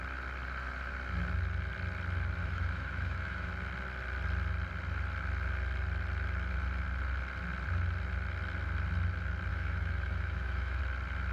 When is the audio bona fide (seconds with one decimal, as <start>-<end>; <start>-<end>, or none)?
0.0-2.4; 3.5-9.5; 10.8-11.3